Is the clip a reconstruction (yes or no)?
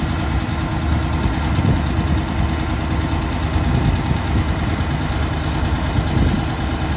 no